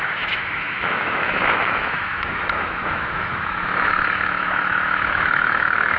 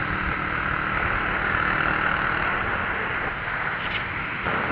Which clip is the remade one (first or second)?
first